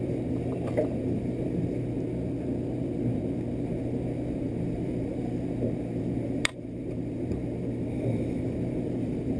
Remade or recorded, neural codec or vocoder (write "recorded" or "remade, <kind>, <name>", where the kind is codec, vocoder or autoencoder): remade, vocoder, BigVGAN v2